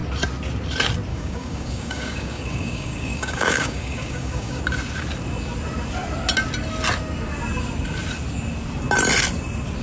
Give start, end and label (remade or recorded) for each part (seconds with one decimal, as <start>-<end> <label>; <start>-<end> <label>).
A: 0.0-1.1 recorded; 1.1-4.6 remade; 4.6-9.8 recorded